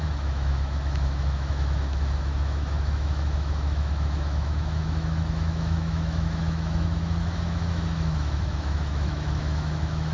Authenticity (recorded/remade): remade